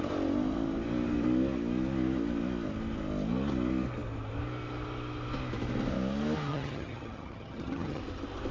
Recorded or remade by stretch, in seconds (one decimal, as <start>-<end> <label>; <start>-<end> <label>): 0.0-6.5 recorded; 6.5-8.0 remade; 8.0-8.5 recorded